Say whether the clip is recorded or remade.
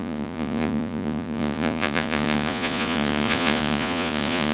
remade